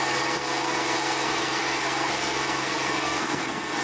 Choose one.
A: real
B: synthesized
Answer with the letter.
B